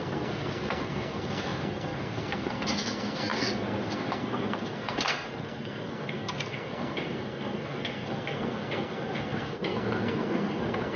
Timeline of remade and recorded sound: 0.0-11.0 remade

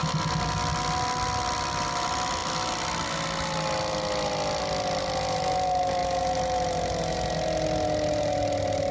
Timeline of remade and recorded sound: 0.0-8.9 recorded

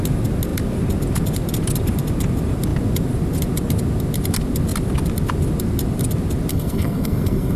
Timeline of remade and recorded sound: 0.0-6.5 recorded; 6.5-7.6 remade

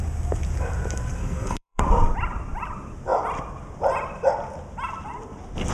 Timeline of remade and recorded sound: 0.0-1.2 recorded; 1.2-1.8 remade; 1.8-5.7 recorded

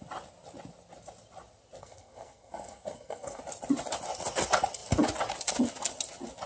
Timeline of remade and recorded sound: 0.0-1.8 recorded; 1.8-3.4 remade; 3.4-6.5 recorded

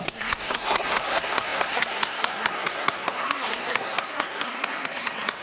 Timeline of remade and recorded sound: 0.0-5.4 remade

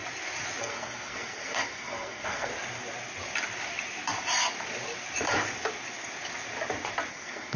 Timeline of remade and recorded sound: 0.0-0.6 recorded; 0.6-2.5 remade; 2.5-7.1 recorded; 7.1-7.6 remade

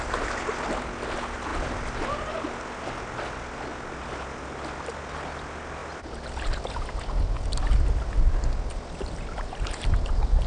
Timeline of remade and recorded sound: 0.0-10.5 recorded